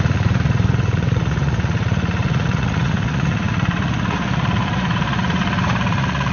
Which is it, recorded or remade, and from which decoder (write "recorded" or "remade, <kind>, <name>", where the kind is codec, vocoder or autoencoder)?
remade, vocoder, Vocos